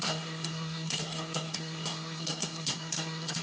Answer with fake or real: fake